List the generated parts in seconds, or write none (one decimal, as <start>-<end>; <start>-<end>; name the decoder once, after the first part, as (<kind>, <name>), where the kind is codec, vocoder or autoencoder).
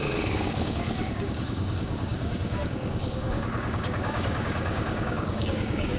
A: 0.0-6.0 (codec, DAC)